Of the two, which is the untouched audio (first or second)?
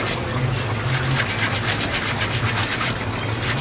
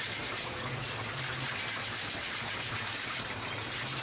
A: first